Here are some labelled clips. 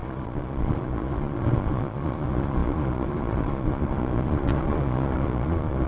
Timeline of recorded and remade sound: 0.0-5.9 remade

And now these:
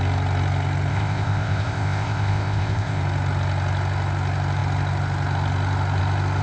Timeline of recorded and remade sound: 0.0-0.9 recorded; 0.9-3.0 remade; 3.0-6.4 recorded

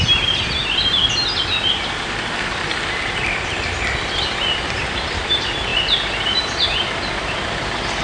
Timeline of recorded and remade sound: 0.0-8.0 remade

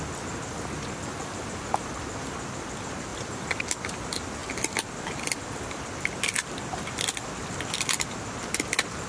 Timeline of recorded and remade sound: 0.0-9.1 recorded